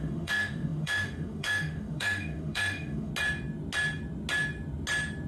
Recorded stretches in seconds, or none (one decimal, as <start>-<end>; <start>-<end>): 3.1-5.3